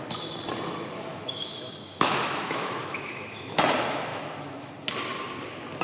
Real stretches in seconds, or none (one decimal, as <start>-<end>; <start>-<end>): 0.0-1.1; 3.6-4.1; 4.7-5.8